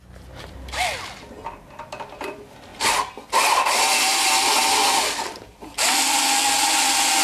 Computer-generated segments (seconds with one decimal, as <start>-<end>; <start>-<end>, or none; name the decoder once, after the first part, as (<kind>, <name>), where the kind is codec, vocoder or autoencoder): none